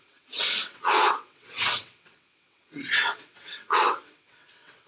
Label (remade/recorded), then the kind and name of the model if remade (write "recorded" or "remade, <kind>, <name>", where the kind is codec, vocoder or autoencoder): remade, vocoder, WaveNeXt